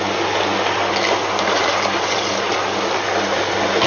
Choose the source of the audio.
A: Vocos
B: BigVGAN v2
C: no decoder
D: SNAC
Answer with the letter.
C